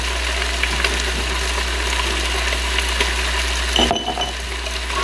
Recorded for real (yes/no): yes